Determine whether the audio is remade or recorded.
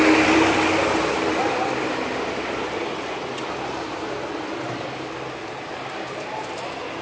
recorded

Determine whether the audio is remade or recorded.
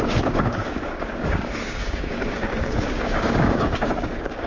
remade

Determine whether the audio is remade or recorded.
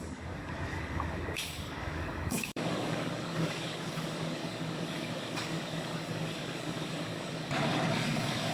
remade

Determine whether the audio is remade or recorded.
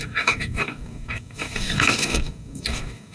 remade